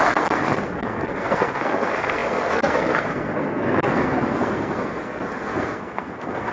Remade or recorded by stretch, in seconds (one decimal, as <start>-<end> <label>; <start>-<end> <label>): 0.0-6.5 remade